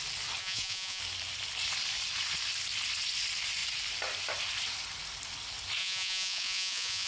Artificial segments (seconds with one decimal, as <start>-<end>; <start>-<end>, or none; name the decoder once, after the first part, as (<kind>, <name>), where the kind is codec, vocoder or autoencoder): 0.4-1.0 (vocoder, Vocos); 5.8-7.1